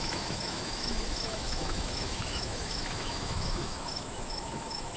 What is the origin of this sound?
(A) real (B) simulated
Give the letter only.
B